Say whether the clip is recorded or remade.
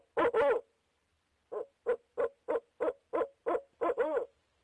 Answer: recorded